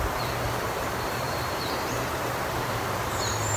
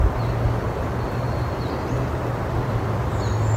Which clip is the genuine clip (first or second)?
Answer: second